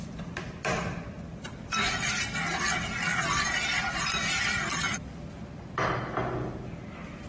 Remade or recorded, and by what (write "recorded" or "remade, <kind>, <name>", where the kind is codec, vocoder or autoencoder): recorded